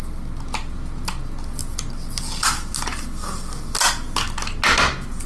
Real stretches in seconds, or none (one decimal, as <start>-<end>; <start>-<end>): 0.0-5.3